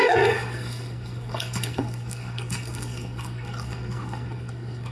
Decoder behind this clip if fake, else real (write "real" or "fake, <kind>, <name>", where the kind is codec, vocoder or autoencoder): fake, codec, SNAC